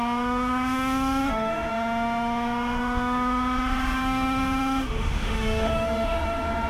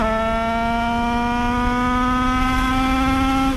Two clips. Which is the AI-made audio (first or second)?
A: first